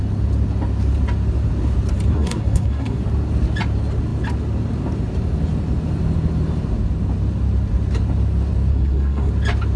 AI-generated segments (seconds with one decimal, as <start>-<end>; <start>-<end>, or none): 2.1-3.0; 8.7-9.3

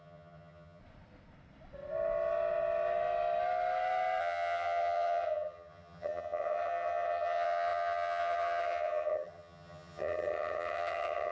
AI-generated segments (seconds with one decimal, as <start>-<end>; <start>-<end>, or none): 0.0-0.8; 4.2-11.3

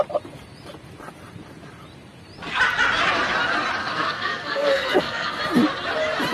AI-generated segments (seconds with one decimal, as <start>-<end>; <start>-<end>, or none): 3.8-5.4

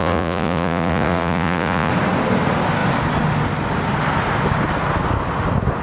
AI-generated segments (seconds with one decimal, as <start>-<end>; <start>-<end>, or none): 0.0-1.9

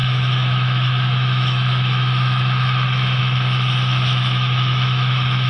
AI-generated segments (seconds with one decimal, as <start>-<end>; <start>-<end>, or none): 0.0-5.5

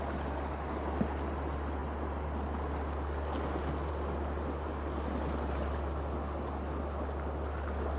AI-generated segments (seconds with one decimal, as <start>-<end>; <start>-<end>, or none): none

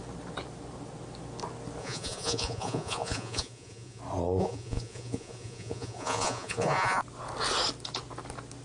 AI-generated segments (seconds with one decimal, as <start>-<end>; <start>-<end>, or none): 1.8-4.0; 4.4-7.0

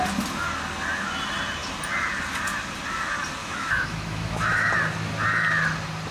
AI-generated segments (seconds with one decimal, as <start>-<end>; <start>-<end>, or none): 3.4-4.7